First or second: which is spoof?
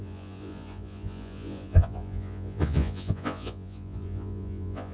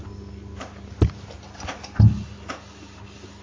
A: first